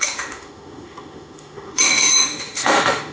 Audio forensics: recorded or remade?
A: remade